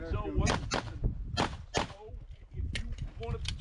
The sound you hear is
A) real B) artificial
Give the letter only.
A